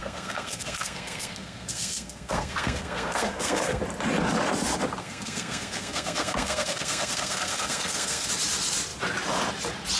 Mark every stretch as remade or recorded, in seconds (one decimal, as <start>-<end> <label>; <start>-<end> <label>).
0.0-3.8 remade; 3.8-5.0 recorded; 5.0-8.3 remade; 8.3-10.0 recorded